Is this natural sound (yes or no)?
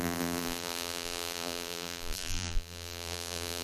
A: no